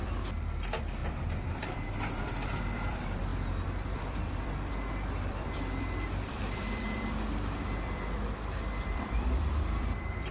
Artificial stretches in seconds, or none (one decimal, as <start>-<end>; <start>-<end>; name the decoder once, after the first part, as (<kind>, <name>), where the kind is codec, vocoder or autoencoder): 0.0-10.3 (vocoder, BigVGAN v2)